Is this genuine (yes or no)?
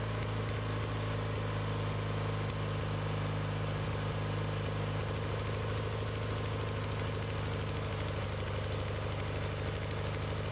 yes